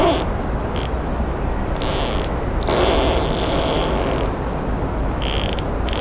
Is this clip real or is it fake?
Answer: real